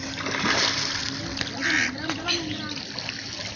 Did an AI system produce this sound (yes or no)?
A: no